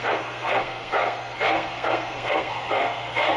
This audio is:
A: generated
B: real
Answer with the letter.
A